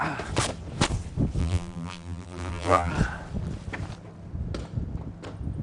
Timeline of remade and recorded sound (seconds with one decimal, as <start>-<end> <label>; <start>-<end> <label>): 0.0-1.4 recorded; 1.4-2.9 remade; 2.9-5.6 recorded